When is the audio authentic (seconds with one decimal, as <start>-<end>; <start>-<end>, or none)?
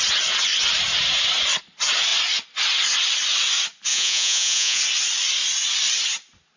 0.0-3.9; 4.8-6.6